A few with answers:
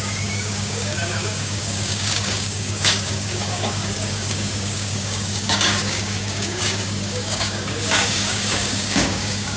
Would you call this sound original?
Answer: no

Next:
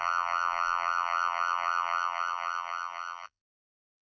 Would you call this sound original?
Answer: no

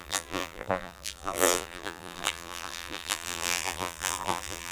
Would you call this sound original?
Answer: no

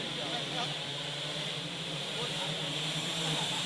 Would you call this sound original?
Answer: no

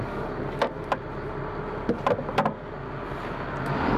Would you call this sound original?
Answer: yes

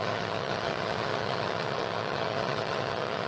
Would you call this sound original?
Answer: no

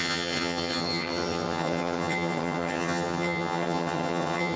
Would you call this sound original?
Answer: no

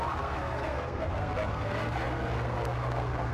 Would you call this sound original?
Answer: no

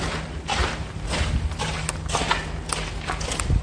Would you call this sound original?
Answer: yes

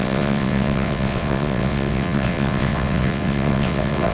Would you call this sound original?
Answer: no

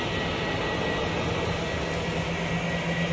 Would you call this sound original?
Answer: yes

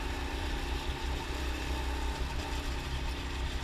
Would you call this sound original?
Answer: yes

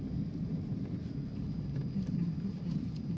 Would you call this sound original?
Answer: yes